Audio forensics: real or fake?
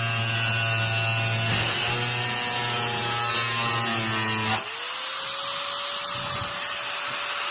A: real